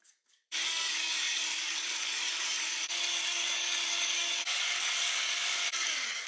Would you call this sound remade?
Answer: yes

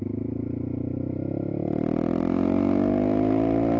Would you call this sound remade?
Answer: no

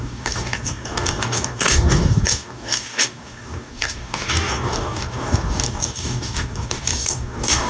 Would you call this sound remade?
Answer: yes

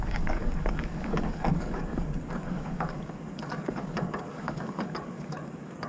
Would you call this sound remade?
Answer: yes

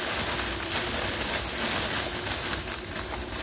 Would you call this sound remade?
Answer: no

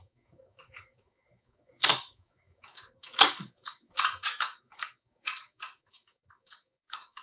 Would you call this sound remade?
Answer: yes